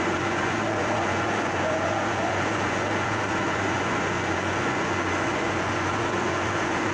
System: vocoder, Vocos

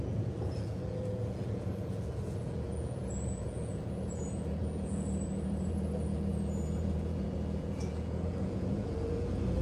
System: vocoder, Vocos